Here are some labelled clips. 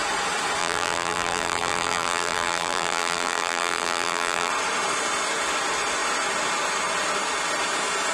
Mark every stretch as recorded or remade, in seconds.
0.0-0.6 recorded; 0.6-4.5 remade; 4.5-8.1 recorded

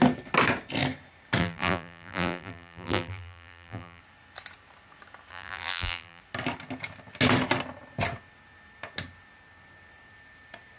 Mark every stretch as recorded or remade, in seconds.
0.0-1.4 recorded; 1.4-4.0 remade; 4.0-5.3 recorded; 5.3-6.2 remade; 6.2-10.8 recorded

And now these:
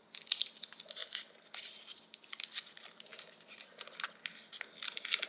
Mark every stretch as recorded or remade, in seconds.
0.0-5.3 recorded

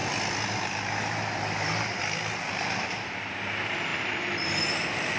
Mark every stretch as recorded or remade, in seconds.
0.0-5.2 recorded